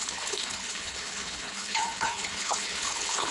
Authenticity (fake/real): fake